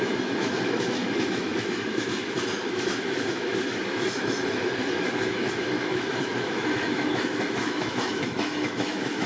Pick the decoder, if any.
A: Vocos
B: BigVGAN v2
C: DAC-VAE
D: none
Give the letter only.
C